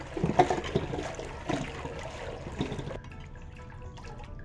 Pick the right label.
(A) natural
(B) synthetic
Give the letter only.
A